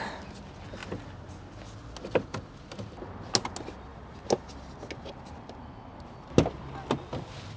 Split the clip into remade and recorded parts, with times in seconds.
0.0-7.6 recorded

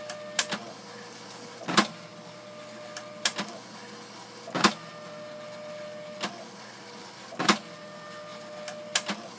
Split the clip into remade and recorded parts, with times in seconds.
0.0-9.4 recorded

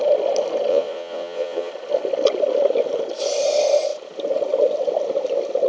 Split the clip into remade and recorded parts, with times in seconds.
0.0-0.7 recorded; 0.7-1.7 remade; 1.7-5.7 recorded

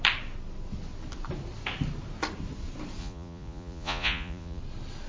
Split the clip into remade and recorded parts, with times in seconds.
0.0-3.0 recorded; 3.0-4.6 remade; 4.6-5.1 recorded

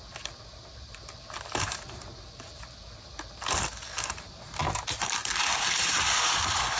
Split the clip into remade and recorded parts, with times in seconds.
0.0-6.8 recorded

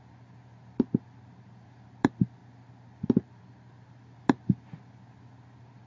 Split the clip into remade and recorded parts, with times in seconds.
0.0-5.9 recorded

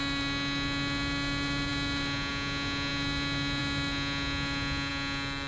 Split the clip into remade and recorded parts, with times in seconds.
0.0-5.5 recorded

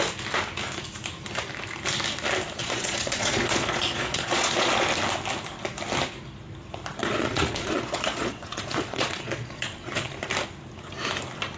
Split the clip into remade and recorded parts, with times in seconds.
0.0-2.6 recorded; 2.6-4.7 remade; 4.7-7.0 recorded; 7.0-10.1 remade; 10.1-11.6 recorded